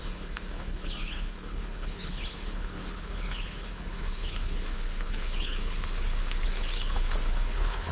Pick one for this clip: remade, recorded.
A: remade